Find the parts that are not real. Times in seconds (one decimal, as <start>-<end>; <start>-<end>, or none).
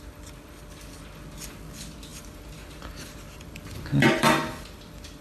2.1-5.2